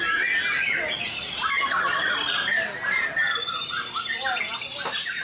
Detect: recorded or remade recorded